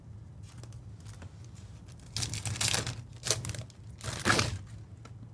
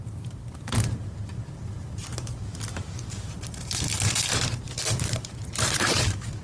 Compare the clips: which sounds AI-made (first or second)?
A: second